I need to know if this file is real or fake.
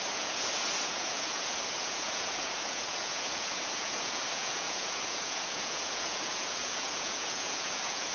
fake